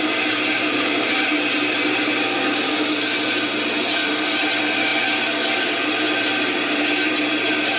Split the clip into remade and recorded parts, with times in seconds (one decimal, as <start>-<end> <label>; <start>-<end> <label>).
0.0-7.8 recorded